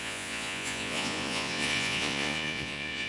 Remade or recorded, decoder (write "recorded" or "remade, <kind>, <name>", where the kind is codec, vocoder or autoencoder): remade, vocoder, Vocos